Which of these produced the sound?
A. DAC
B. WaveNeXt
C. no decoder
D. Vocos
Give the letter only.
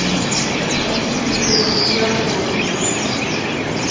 C